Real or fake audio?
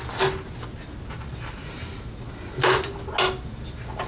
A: real